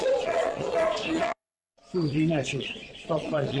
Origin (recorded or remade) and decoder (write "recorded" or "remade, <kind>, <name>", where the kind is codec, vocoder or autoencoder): remade, vocoder, Vocos